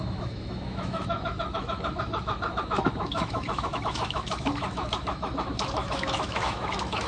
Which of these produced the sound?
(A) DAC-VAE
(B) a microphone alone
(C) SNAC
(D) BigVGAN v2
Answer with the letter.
A